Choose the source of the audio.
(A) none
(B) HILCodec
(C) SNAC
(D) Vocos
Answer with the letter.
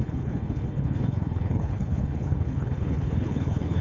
B